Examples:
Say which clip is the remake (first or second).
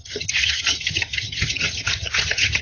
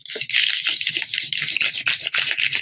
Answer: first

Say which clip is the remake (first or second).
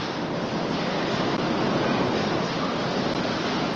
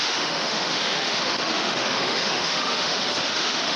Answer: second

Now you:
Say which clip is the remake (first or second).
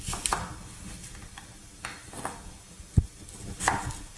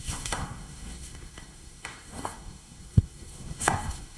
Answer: second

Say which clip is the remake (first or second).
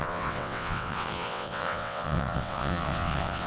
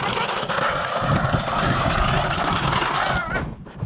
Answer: first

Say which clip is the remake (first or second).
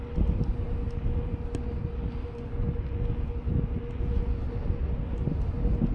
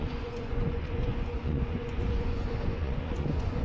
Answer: second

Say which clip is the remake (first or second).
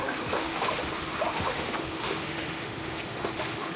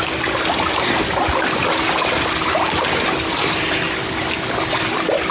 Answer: first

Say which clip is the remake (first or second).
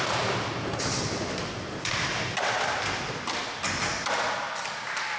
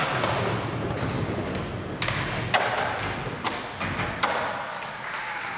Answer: first